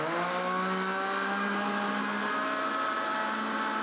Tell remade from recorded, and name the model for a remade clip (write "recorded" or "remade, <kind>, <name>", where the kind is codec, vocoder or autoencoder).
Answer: recorded